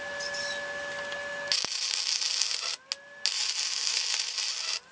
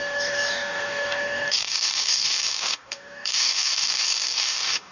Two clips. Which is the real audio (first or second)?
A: first